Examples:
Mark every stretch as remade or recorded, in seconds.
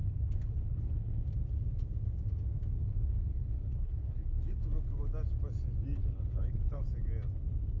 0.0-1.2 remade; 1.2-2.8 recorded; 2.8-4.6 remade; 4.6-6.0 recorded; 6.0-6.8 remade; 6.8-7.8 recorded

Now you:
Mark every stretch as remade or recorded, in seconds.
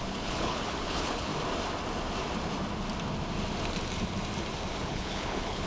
0.0-1.3 remade; 1.3-4.7 recorded; 4.7-5.7 remade